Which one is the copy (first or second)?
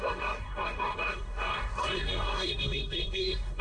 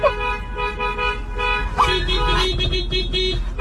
first